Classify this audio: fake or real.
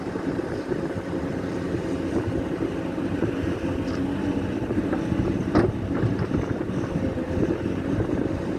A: fake